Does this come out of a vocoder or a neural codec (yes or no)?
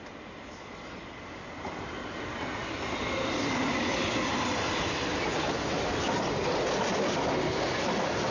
no